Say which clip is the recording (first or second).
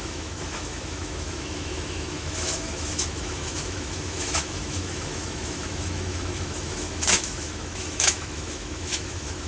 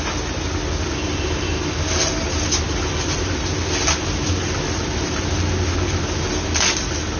second